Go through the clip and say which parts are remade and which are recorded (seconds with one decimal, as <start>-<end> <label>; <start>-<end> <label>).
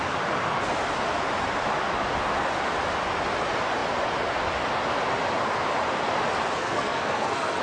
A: 0.0-6.6 recorded; 6.6-7.6 remade